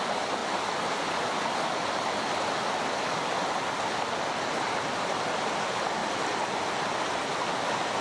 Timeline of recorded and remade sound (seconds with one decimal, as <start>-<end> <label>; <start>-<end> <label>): 0.0-8.0 recorded